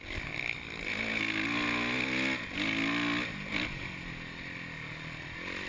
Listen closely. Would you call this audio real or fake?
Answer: real